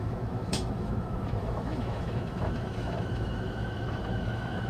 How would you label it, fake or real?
fake